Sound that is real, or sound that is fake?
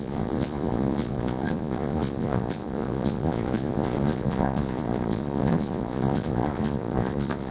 fake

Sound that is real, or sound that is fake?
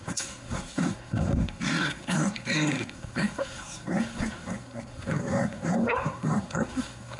fake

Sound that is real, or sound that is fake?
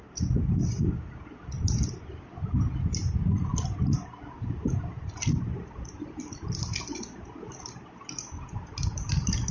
real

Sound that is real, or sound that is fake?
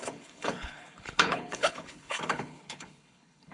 fake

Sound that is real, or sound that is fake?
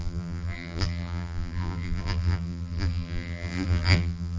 fake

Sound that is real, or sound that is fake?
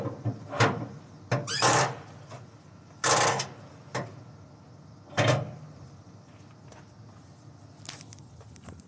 real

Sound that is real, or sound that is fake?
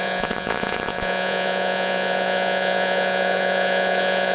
fake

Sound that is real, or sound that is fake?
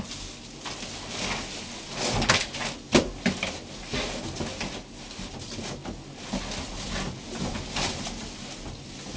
real